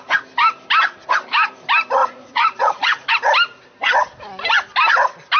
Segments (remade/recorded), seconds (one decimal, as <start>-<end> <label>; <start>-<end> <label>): 0.0-2.0 recorded; 2.0-3.1 remade; 3.1-5.4 recorded